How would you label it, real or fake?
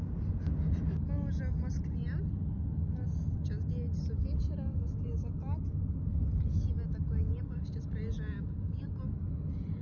real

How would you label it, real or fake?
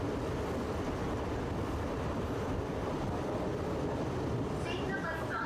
real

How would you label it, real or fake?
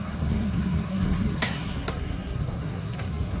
fake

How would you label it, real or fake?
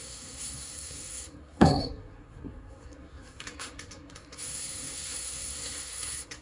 fake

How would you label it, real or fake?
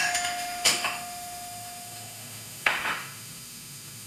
fake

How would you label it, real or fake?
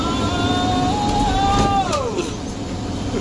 real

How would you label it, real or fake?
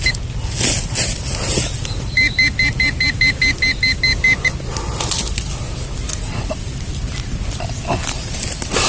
real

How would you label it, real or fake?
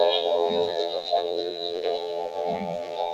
fake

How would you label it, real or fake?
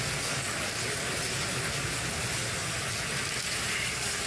real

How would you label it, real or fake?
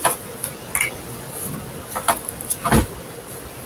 real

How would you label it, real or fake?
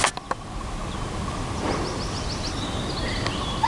real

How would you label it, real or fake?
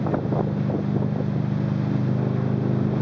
real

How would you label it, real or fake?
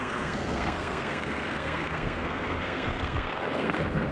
fake